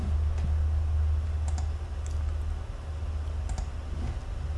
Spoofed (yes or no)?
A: no